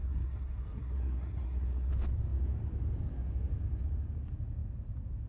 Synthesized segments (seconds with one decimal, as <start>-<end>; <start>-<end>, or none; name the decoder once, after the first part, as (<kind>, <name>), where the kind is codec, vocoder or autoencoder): 0.0-1.9 (codec, SNAC)